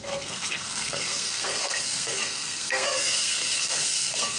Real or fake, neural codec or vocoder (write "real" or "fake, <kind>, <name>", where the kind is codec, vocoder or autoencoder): fake, codec, SNAC